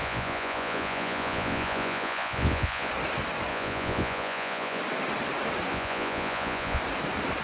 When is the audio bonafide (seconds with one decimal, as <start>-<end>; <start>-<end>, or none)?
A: 2.9-3.5; 4.8-5.7; 6.8-7.4